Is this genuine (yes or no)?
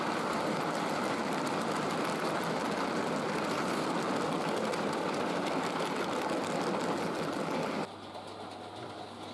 yes